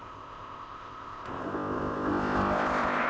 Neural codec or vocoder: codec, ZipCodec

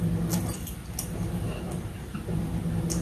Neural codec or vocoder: none